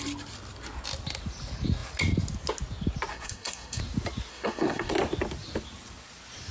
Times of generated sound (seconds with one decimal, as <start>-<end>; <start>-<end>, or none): 3.1-3.8; 4.3-4.9